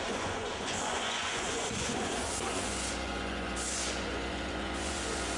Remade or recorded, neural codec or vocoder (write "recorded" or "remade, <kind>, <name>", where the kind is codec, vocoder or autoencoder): remade, vocoder, Vocos